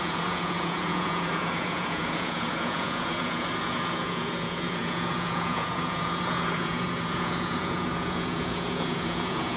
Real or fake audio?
fake